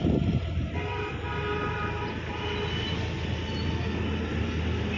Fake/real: real